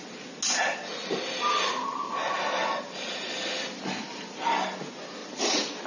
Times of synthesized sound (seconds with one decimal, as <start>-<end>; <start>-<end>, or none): 5.2-5.9